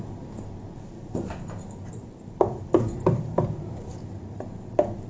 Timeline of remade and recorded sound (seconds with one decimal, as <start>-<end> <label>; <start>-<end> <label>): 0.0-1.8 recorded; 1.8-3.9 remade; 3.9-5.1 recorded